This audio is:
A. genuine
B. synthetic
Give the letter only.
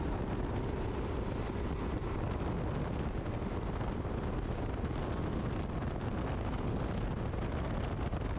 A